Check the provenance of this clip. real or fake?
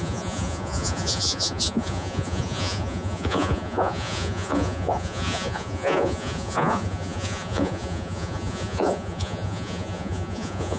fake